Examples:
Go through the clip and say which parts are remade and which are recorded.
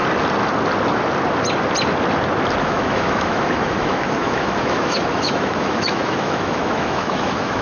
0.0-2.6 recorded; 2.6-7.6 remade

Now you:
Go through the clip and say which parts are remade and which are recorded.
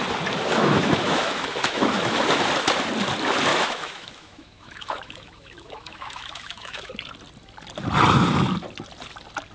0.0-0.5 recorded; 0.5-2.2 remade; 2.2-3.5 recorded; 3.5-6.9 remade; 6.9-9.5 recorded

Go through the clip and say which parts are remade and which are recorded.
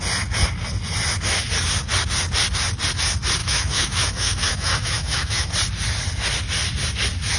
0.0-3.4 recorded; 3.4-5.5 remade; 5.5-7.4 recorded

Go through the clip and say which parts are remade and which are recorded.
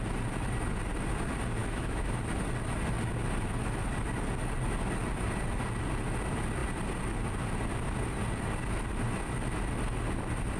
0.0-1.6 recorded; 1.6-2.2 remade; 2.2-10.6 recorded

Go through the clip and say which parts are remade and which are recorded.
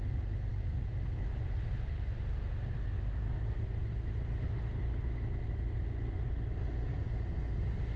0.0-8.0 recorded